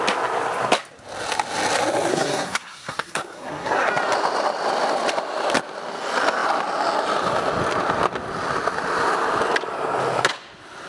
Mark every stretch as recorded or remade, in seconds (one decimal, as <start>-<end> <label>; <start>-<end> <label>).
0.0-2.1 recorded; 2.1-3.9 remade; 3.9-10.9 recorded